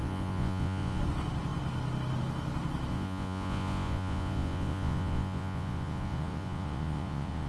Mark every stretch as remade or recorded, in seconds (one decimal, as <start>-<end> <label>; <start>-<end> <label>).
0.0-1.0 remade; 1.0-2.9 recorded; 2.9-7.5 remade